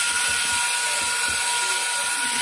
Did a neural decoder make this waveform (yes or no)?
no